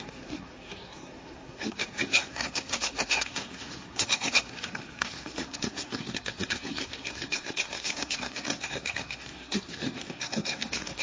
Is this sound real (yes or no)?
no